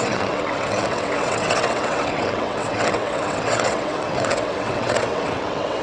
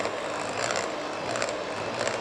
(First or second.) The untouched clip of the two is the second